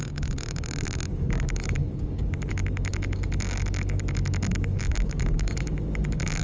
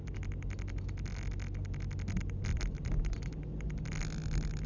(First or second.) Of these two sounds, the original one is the second